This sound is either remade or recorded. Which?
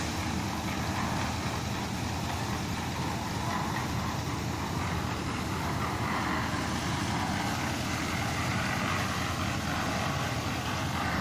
recorded